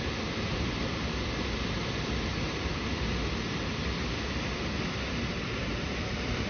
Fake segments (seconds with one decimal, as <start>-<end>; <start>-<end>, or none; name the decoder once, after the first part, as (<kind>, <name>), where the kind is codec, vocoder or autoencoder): none